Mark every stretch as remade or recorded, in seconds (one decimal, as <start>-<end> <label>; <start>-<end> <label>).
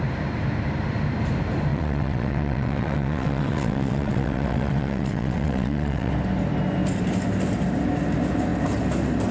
0.0-1.7 recorded; 1.7-6.1 remade; 6.1-9.3 recorded